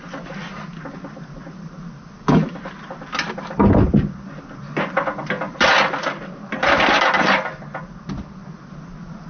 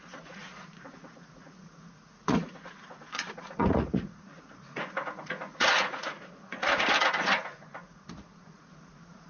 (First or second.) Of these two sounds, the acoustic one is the first